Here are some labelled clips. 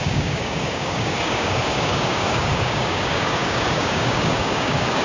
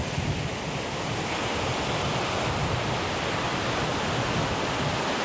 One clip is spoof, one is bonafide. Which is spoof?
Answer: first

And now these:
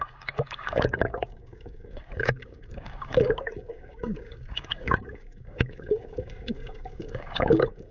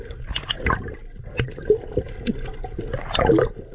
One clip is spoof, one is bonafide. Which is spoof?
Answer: first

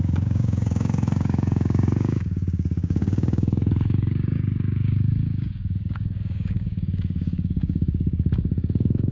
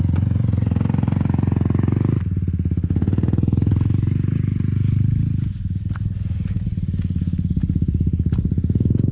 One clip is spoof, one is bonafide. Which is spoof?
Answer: first